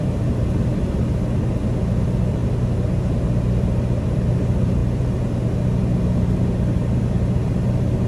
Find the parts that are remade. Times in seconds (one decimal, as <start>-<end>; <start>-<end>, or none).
none